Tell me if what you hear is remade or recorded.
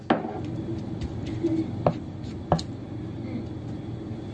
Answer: recorded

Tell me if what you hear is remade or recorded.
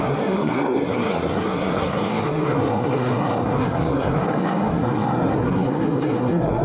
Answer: remade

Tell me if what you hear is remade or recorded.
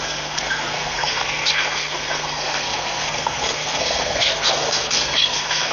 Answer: remade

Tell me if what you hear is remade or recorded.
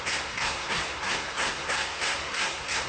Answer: remade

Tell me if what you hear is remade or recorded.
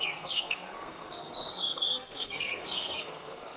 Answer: remade